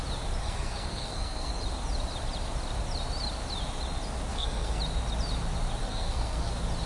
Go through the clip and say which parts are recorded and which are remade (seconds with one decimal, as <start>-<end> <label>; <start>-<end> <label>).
0.0-0.4 recorded; 0.4-1.5 remade; 1.5-4.3 recorded; 4.3-4.8 remade; 4.8-5.8 recorded; 5.8-6.5 remade; 6.5-6.9 recorded